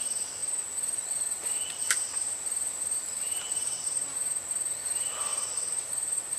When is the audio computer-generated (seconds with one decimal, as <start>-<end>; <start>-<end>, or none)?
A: 1.8-4.2; 5.3-6.4